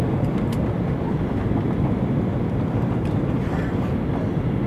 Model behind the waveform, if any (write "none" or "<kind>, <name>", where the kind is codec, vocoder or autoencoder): vocoder, BigVGAN v2